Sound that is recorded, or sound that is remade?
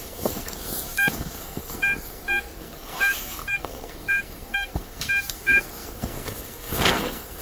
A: remade